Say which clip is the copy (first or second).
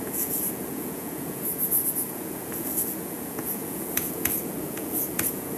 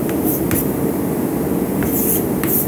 first